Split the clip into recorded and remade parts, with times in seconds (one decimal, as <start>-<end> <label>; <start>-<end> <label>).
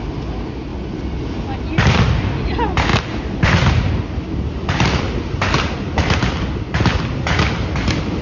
0.0-8.2 recorded